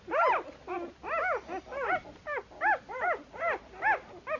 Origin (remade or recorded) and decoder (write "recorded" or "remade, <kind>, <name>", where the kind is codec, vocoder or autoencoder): recorded